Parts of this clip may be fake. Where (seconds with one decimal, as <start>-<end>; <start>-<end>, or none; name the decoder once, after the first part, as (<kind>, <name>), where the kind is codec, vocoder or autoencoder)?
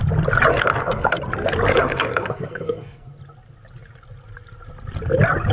0.5-1.2 (codec, SNAC); 1.7-3.1